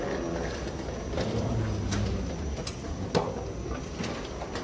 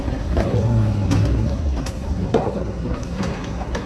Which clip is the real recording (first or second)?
first